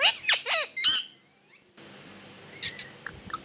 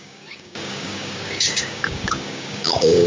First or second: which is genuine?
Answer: first